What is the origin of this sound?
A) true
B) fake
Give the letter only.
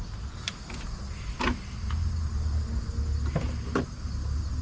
A